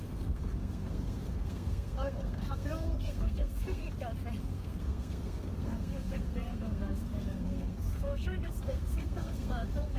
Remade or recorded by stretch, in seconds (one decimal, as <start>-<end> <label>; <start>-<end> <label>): 0.0-3.8 remade; 3.8-4.4 recorded; 4.4-10.0 remade